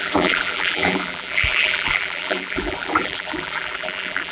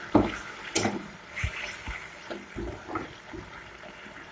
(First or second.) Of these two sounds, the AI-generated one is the first